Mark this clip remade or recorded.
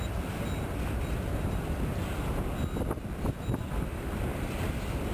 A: recorded